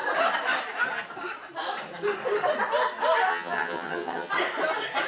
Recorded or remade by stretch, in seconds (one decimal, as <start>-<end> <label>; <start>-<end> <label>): 0.0-3.3 recorded; 3.3-4.3 remade; 4.3-5.1 recorded